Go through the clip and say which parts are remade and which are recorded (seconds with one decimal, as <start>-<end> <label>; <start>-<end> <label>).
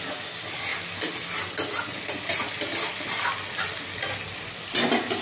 0.0-5.2 recorded